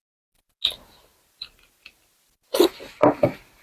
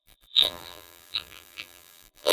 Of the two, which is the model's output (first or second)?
second